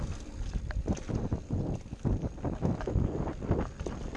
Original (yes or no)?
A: yes